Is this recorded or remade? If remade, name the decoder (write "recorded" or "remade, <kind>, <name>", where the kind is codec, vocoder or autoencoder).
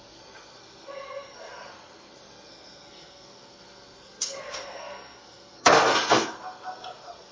remade, codec, SNAC